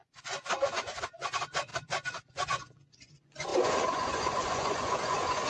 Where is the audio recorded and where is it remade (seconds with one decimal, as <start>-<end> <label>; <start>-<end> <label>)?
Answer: 0.0-1.7 remade; 1.7-2.3 recorded; 2.3-5.5 remade